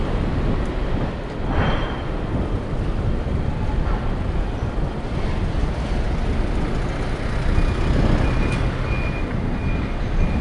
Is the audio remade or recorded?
recorded